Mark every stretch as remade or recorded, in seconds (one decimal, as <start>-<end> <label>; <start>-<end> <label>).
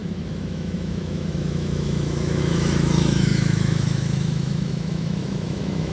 0.0-5.9 remade